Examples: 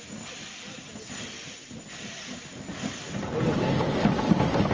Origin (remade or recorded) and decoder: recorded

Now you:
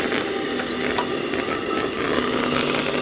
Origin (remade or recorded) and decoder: recorded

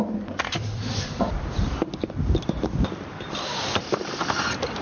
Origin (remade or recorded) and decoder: remade, vocoder, BigVGAN v2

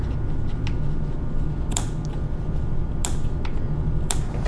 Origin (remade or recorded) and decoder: recorded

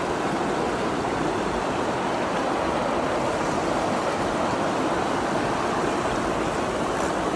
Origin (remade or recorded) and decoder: recorded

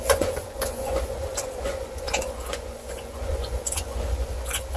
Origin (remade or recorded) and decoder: remade, vocoder, Vocos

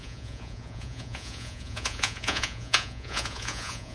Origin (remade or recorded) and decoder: remade, vocoder, Vocos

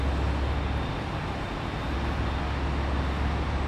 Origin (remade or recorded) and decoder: recorded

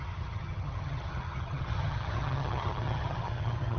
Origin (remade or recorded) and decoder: remade, vocoder, HiFi-GAN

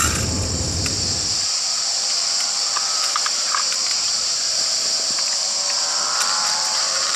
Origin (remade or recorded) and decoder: remade, vocoder, BigVGAN v2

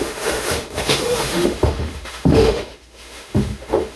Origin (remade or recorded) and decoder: remade, autoencoder, DAC-VAE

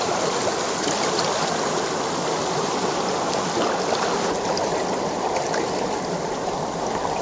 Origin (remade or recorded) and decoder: recorded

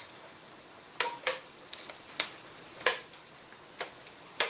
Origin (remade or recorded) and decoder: recorded